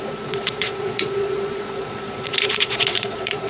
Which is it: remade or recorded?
remade